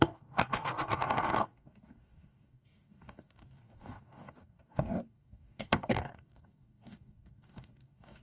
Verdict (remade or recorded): remade